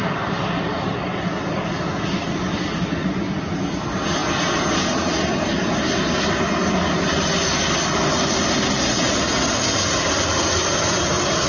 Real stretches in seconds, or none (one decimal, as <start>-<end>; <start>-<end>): 0.0-11.5

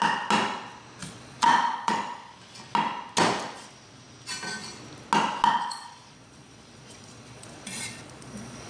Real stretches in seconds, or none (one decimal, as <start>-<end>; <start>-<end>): 0.0-1.0; 2.3-5.5